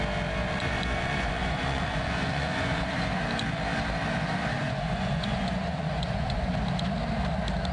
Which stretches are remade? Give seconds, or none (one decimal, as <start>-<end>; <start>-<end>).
0.4-3.2; 4.6-6.5